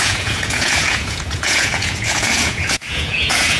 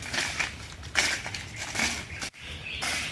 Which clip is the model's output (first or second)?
first